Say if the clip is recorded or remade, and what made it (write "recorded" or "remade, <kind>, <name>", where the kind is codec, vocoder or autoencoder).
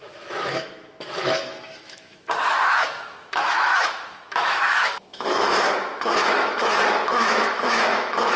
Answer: remade, autoencoder, DAC-VAE